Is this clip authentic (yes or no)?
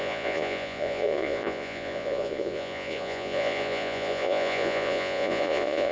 no